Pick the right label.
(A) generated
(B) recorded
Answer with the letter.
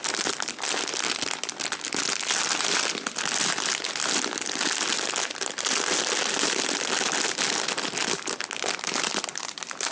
B